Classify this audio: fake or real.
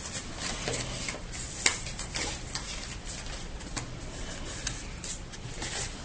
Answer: real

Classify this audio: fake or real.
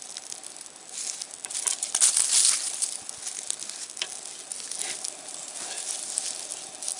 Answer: real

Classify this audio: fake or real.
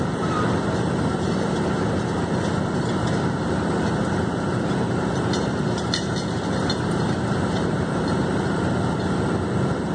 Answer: real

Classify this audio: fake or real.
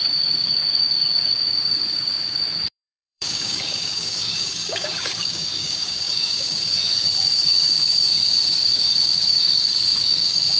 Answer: fake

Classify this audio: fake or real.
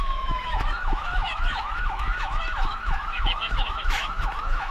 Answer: fake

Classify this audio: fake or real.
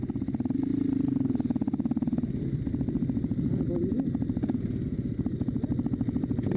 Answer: real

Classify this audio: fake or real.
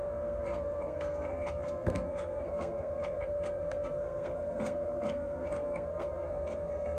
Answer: fake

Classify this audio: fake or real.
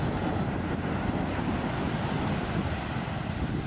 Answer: real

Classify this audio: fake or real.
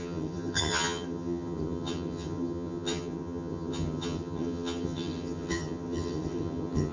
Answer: fake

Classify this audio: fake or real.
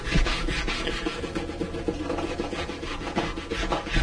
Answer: real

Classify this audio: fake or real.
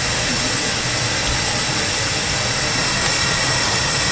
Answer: real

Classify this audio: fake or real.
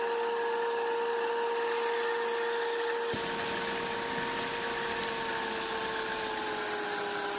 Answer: real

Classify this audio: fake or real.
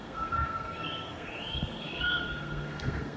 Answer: fake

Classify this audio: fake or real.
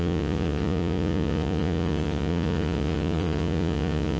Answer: fake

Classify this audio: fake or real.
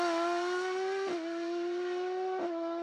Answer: real